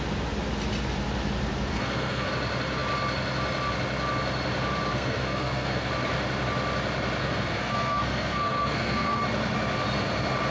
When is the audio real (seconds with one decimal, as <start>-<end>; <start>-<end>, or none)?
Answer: 0.0-1.7; 2.3-4.9; 5.9-7.2; 9.2-10.5